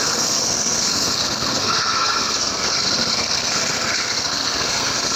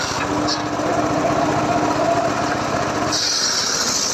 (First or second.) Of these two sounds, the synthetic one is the first